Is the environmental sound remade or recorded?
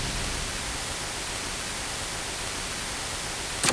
recorded